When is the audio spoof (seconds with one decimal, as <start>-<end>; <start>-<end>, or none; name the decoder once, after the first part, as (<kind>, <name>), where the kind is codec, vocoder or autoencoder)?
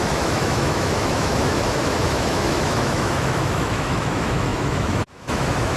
0.0-5.8 (autoencoder, DAC-VAE)